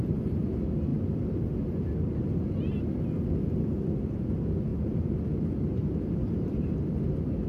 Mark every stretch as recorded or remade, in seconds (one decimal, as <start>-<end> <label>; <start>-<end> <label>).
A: 0.0-4.7 recorded; 4.7-5.2 remade; 5.2-5.8 recorded; 5.8-7.0 remade; 7.0-7.5 recorded